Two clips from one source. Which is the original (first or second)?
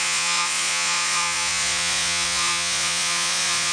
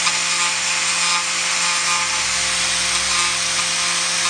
second